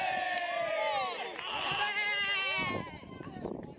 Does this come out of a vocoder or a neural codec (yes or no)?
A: no